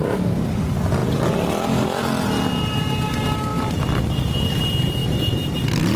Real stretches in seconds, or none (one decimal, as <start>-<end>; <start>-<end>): 0.0-3.5; 4.6-6.0